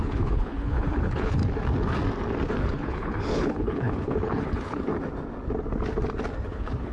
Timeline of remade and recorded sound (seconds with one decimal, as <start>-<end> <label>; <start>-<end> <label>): 0.0-1.4 remade; 1.4-2.6 recorded; 2.6-4.9 remade; 4.9-6.5 recorded; 6.5-6.9 remade